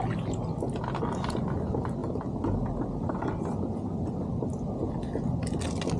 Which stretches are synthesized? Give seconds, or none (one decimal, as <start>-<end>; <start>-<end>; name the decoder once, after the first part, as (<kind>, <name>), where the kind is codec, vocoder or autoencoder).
none

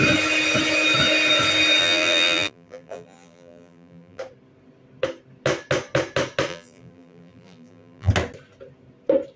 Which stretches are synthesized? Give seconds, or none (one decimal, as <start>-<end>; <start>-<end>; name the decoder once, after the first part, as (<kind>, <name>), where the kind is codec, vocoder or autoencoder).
1.8-4.2 (vocoder, BigVGAN v2); 6.5-8.1

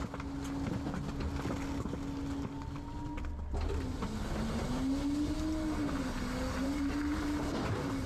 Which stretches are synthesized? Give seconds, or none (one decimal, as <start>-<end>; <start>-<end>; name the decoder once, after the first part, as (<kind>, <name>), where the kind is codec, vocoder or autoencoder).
6.6-8.1 (vocoder, BigVGAN v2)

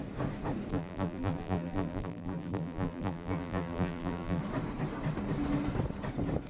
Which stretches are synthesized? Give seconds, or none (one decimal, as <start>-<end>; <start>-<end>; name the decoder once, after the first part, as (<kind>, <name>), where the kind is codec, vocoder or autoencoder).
0.7-4.4 (vocoder, BigVGAN v2)

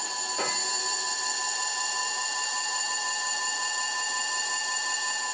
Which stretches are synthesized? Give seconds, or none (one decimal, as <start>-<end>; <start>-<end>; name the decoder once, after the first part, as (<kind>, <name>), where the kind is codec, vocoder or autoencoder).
2.0-2.9 (vocoder, BigVGAN v2)

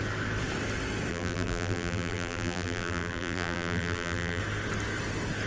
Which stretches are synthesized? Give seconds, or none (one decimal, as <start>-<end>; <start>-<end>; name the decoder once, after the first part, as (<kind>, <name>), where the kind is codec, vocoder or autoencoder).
1.1-4.4 (vocoder, BigVGAN v2)

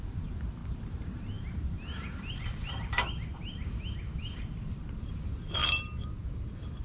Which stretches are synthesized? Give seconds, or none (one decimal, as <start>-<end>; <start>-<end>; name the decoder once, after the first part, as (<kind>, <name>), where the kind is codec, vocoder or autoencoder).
0.0-5.6 (vocoder, BigVGAN v2)

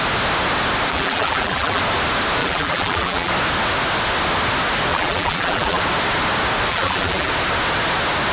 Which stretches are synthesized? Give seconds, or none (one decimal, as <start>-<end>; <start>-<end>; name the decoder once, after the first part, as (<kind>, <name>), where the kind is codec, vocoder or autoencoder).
0.9-1.8 (vocoder, BigVGAN v2); 2.4-3.3; 4.9-5.8; 6.7-7.3